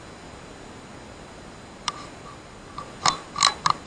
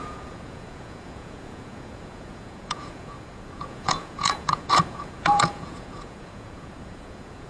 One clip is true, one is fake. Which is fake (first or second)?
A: second